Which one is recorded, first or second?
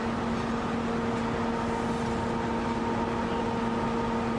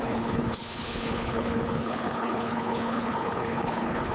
first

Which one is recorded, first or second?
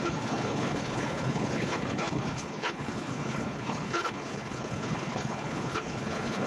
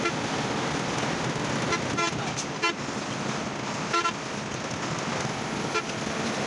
second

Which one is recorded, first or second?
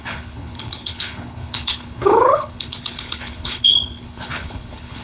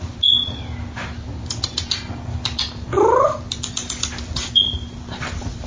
second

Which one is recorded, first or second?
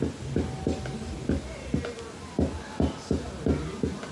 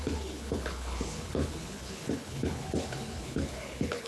first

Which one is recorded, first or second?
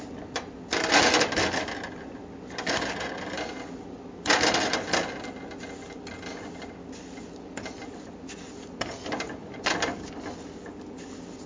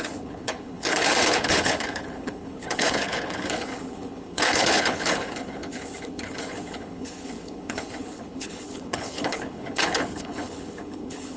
first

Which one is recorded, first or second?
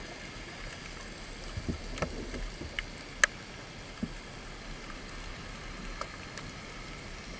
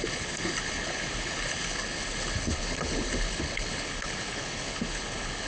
first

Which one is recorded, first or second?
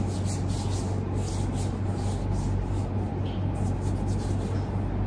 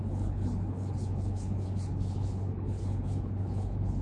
first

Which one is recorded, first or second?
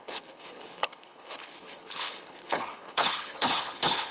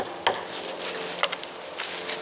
second